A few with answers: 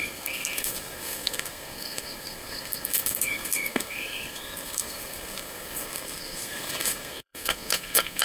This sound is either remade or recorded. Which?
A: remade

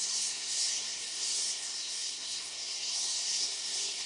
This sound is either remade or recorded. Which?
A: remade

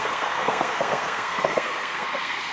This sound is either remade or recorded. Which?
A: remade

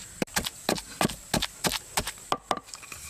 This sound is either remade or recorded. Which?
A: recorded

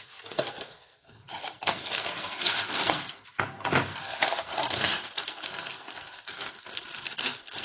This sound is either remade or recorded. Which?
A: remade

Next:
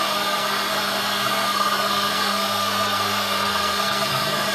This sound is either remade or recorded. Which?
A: remade